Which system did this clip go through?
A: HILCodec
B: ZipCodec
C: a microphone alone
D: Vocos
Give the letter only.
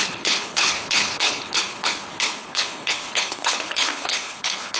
A